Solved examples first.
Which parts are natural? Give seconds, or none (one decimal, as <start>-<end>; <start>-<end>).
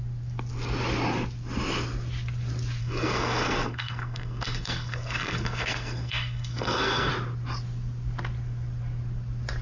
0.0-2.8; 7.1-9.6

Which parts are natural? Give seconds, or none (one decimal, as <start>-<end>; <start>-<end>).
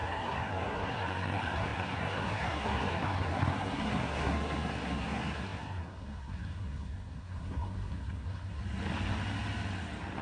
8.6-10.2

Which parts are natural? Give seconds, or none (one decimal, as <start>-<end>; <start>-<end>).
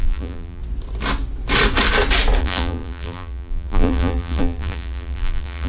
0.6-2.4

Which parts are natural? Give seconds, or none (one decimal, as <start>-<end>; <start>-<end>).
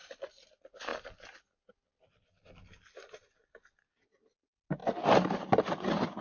0.0-6.2